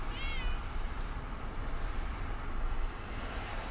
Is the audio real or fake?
real